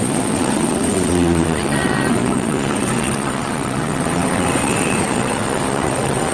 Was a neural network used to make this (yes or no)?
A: yes